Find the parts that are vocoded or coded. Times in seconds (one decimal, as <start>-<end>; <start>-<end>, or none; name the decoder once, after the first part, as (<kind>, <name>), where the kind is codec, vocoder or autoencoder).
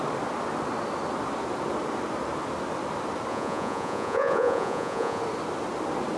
3.3-5.2 (vocoder, Vocos)